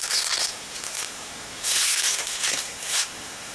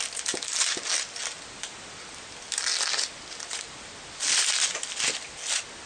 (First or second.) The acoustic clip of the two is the second